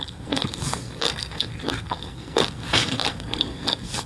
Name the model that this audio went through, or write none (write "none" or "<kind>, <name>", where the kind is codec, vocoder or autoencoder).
codec, SNAC